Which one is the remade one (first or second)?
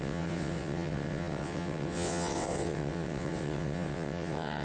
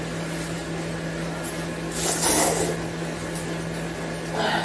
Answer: first